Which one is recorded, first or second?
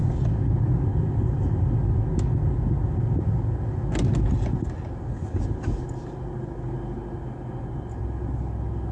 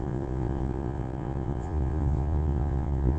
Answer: first